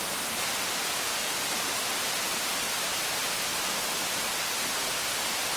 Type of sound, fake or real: real